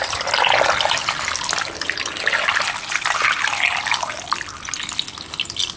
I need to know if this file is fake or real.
real